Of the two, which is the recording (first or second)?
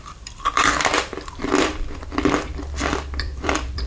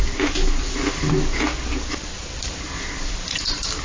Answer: second